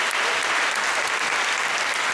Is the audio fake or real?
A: real